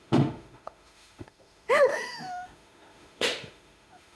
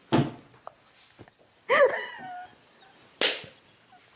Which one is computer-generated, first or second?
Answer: first